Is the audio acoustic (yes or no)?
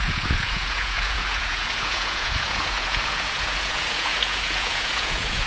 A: no